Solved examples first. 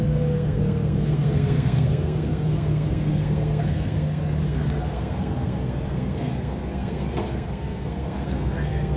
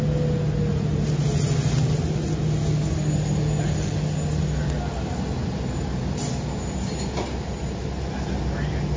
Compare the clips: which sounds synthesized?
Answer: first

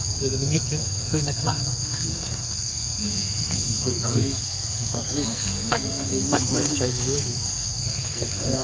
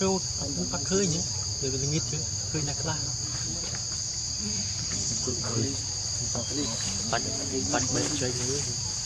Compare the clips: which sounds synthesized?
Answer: first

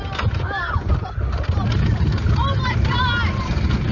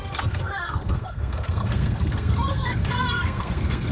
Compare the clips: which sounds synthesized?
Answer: second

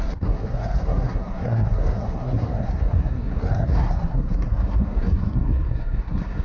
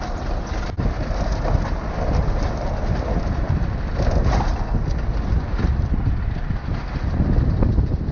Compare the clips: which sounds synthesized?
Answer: first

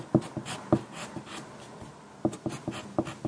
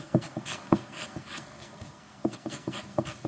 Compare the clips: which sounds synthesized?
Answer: second